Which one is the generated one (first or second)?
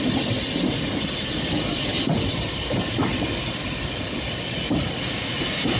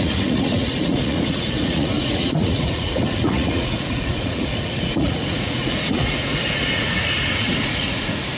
second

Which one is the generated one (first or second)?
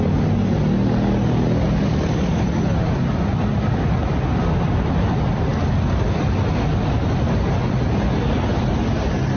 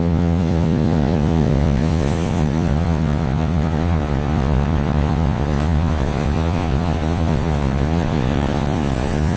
second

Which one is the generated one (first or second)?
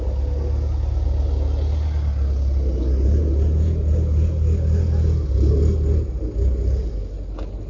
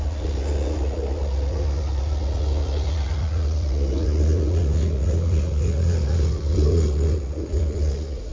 second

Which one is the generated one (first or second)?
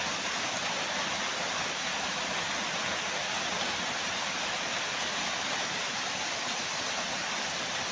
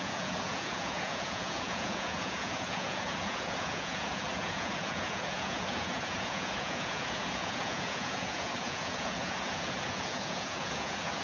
second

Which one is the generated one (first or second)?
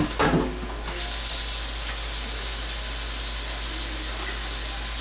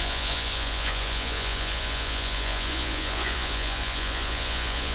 second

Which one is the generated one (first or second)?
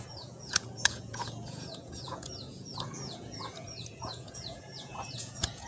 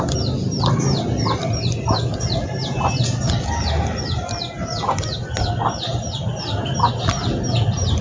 first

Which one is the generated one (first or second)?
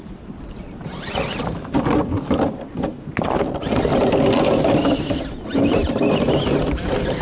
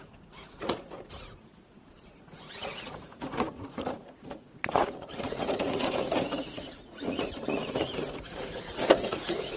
second